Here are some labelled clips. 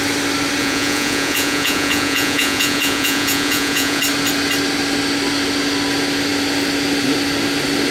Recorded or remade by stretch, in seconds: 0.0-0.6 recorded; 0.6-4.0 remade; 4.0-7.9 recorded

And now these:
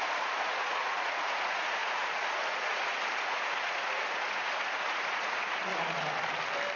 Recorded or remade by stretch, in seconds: 0.0-5.7 remade; 5.7-6.8 recorded

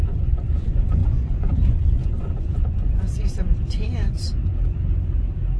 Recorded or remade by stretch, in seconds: 0.0-4.4 remade; 4.4-5.6 recorded

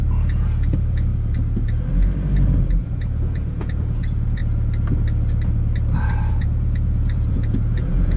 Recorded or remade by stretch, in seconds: 0.0-1.1 remade; 1.1-2.8 recorded; 2.8-4.4 remade; 4.4-6.3 recorded; 6.3-8.2 remade

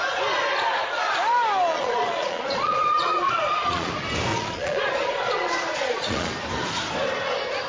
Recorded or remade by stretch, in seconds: 0.0-1.7 recorded; 1.7-3.9 remade; 3.9-4.3 recorded; 4.3-6.3 remade; 6.3-7.7 recorded

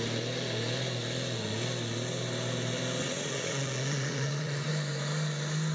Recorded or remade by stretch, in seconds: 0.0-3.0 recorded; 3.0-4.7 remade; 4.7-5.7 recorded